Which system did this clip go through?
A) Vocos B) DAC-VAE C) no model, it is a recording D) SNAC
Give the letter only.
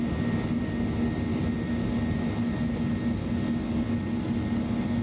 C